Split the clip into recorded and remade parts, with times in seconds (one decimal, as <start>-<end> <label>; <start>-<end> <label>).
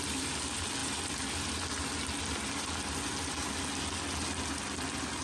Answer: 0.0-5.2 recorded